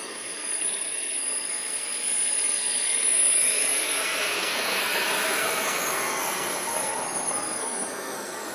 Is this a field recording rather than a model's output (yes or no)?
no